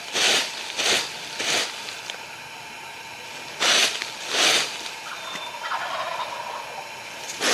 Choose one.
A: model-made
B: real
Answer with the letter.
B